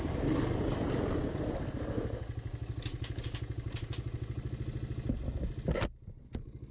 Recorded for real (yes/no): yes